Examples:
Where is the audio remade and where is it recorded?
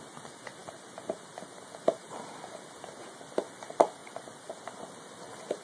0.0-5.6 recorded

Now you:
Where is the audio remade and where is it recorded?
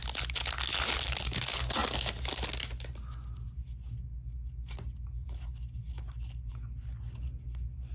0.0-7.9 recorded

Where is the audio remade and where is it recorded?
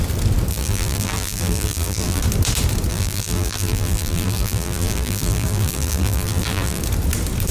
0.0-0.5 recorded; 0.5-2.2 remade; 2.2-2.9 recorded; 2.9-6.8 remade; 6.8-7.5 recorded